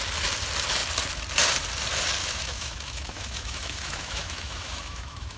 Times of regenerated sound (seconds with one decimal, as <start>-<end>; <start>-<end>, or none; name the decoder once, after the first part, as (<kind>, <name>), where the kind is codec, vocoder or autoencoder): 2.2-5.4 (autoencoder, DAC-VAE)